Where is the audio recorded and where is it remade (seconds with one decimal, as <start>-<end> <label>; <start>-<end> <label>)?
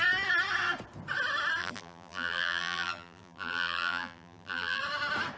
0.0-1.6 recorded; 1.6-4.8 remade; 4.8-5.4 recorded